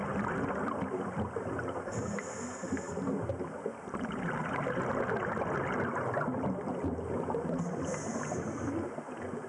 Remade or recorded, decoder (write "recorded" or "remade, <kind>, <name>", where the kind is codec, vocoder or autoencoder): recorded